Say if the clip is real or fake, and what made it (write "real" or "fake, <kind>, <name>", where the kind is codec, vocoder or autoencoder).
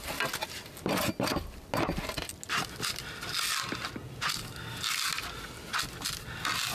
real